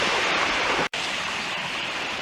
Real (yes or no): no